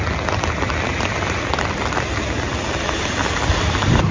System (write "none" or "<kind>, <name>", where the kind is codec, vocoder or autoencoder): none